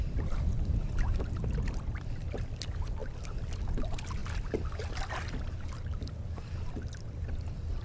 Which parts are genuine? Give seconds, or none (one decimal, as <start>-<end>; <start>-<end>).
0.0-7.8